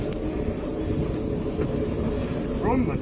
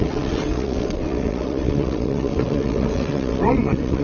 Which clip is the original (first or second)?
first